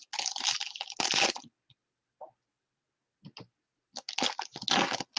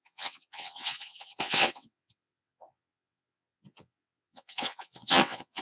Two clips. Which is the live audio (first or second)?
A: first